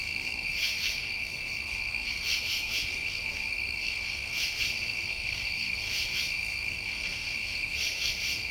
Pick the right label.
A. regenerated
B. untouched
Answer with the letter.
A